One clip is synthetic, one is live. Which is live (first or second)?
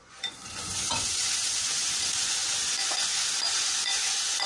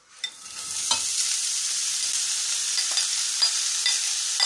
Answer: second